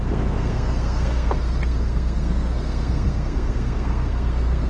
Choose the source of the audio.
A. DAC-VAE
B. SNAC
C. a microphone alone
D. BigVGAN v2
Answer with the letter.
B